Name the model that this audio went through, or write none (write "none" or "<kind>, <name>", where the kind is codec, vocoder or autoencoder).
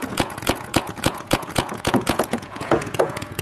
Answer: vocoder, Vocos